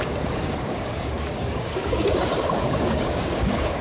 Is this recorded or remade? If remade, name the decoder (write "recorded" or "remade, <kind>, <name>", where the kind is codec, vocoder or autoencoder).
remade, codec, DAC